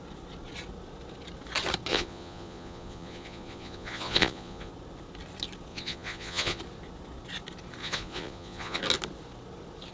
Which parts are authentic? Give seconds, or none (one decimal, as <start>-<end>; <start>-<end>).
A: 0.0-1.9; 4.7-5.7; 6.6-7.8; 8.8-9.9